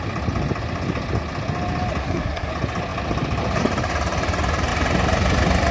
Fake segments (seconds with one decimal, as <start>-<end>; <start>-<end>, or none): 2.0-2.5